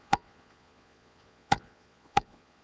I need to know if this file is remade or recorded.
remade